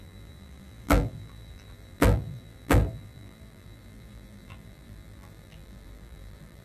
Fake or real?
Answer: fake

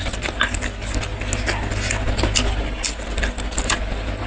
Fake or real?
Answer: real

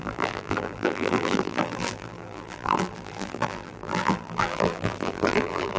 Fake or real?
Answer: fake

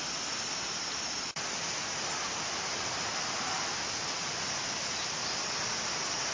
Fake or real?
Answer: real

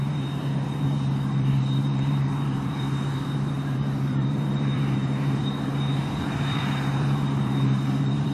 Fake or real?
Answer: fake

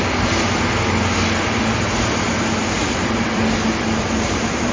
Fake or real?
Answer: real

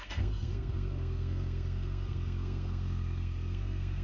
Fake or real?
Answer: fake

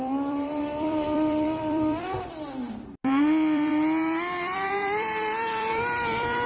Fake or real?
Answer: fake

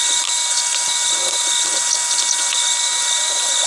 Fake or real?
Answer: real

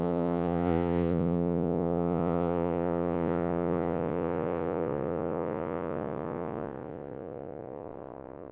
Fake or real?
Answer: fake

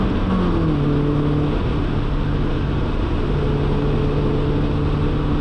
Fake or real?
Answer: real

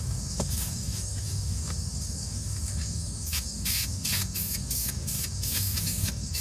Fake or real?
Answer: fake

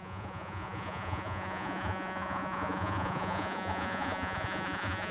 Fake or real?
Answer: fake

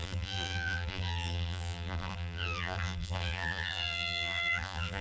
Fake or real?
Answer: fake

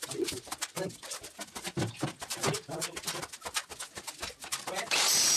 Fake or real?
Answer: real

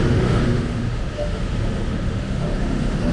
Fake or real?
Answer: fake